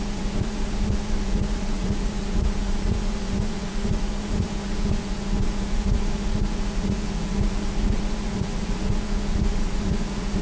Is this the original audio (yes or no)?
no